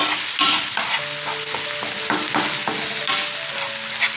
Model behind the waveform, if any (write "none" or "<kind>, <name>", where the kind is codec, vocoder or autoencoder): none